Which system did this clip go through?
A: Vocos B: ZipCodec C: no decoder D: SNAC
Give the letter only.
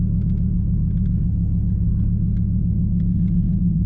C